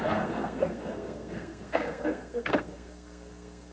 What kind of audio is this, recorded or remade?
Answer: remade